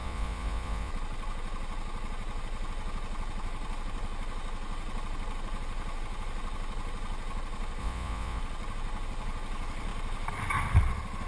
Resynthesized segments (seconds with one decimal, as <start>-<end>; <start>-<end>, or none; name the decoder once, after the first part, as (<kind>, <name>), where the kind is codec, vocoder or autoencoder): 0.0-0.9 (vocoder, Vocos); 7.8-8.4